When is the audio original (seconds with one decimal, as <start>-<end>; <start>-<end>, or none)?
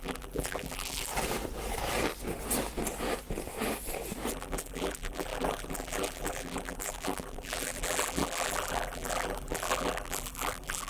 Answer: 1.1-4.3